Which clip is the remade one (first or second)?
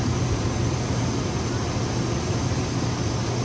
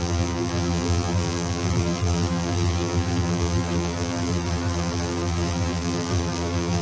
second